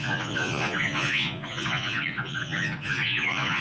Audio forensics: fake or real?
fake